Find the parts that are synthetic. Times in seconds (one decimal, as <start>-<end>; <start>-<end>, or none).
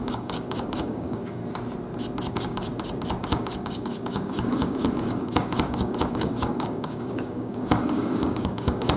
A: 0.0-1.4; 2.3-2.7; 3.3-9.0